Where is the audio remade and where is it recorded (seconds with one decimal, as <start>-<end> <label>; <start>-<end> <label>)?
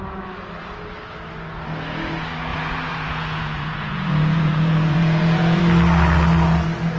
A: 0.0-2.5 recorded; 2.5-5.6 remade; 5.6-7.0 recorded